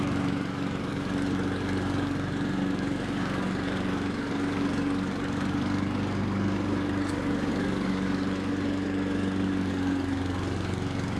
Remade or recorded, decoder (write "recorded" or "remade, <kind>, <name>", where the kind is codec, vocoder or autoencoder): remade, codec, DAC